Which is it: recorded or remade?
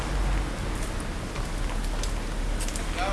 recorded